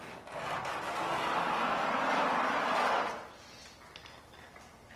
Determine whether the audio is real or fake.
real